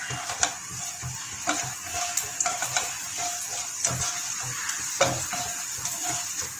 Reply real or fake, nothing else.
real